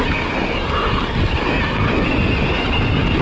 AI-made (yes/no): no